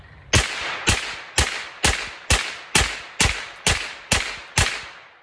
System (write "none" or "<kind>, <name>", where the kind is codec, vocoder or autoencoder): none